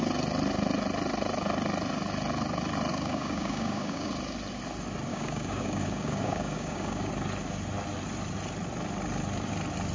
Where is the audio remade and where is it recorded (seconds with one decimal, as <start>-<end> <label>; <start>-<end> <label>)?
0.0-2.9 recorded; 2.9-4.1 remade; 4.1-5.1 recorded; 5.1-7.1 remade; 7.1-9.9 recorded